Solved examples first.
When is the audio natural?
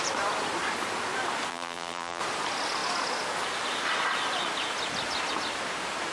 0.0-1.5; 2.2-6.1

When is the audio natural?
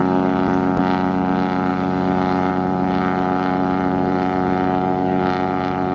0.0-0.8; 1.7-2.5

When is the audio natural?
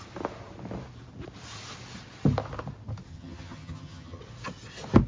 0.0-3.1; 4.2-5.1